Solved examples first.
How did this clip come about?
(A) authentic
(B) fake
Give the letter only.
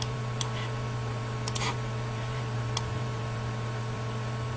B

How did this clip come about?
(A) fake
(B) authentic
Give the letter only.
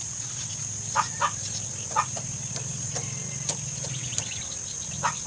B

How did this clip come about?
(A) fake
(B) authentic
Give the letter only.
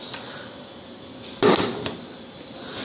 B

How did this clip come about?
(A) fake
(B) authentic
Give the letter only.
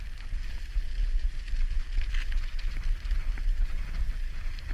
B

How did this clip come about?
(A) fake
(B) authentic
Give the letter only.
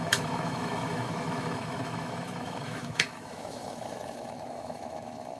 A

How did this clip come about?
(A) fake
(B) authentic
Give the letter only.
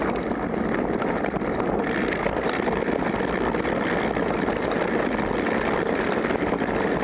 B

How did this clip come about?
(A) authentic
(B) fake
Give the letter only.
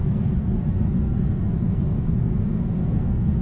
B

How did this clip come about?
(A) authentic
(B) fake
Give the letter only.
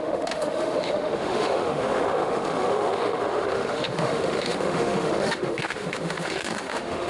B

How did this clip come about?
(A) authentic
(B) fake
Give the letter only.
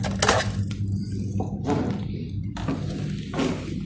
A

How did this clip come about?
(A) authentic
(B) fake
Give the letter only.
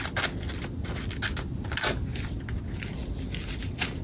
A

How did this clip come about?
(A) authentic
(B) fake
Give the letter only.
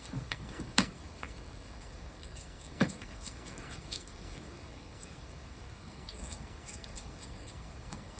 B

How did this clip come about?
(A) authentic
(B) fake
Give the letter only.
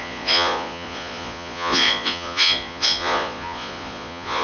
B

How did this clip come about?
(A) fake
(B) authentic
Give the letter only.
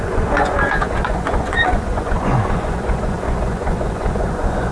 A